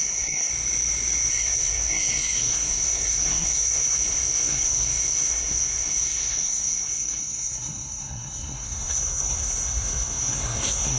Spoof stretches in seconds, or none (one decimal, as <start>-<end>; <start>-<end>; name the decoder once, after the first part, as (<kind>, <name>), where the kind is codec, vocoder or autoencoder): 0.0-0.5 (codec, SNAC); 1.3-11.0